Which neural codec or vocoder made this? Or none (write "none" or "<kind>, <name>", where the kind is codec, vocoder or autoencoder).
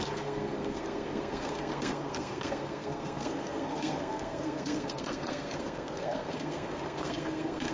codec, SNAC